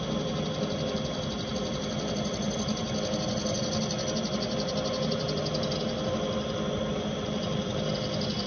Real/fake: real